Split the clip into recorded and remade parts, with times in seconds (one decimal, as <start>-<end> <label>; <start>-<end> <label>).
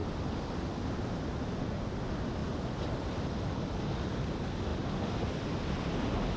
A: 0.0-0.6 remade; 0.6-2.4 recorded; 2.4-4.2 remade; 4.2-6.4 recorded